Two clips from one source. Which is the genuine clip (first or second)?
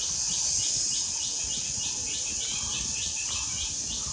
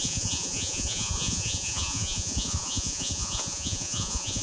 first